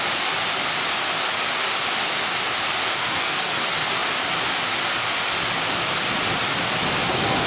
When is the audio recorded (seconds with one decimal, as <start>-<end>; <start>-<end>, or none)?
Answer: 0.0-3.0; 3.6-7.5